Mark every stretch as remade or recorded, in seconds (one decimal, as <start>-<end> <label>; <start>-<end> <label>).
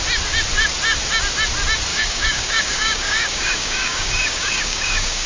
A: 0.0-1.9 recorded; 1.9-5.3 remade